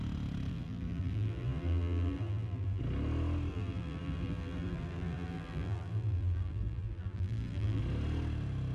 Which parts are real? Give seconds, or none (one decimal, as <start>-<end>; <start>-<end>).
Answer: 0.0-0.5; 2.8-3.5; 7.8-8.7